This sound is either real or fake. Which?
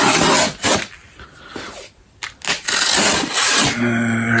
real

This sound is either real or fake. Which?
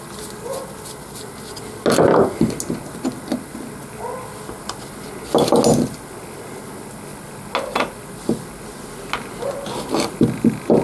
real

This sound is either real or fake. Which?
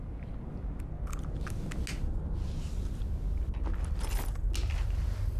real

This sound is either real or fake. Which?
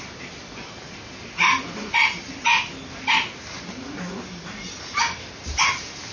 real